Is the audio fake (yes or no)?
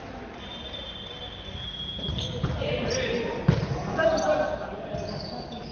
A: no